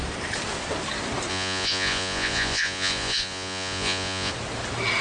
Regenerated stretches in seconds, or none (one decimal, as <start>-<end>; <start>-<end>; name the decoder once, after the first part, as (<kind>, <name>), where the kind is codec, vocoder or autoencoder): 1.3-4.3 (vocoder, Vocos)